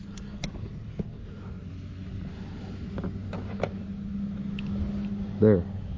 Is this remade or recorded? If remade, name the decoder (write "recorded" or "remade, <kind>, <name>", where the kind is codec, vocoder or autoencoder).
recorded